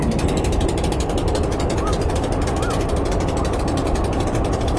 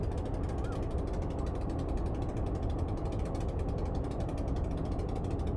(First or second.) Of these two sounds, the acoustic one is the second